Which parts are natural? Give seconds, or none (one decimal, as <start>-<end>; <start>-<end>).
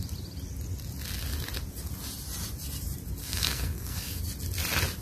0.0-3.2; 4.2-5.0